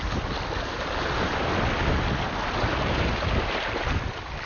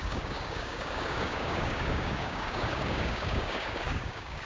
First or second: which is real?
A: first